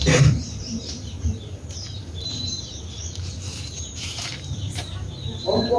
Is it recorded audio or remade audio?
remade